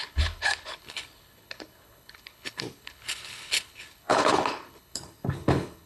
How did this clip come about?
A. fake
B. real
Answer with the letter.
A